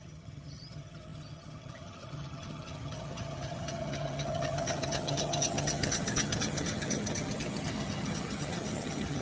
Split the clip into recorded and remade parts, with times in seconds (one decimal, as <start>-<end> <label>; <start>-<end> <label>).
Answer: 0.0-9.2 remade